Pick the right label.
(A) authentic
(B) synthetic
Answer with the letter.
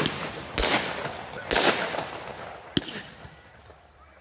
A